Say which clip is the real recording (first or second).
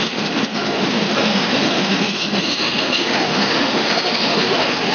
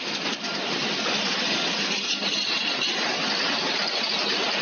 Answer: second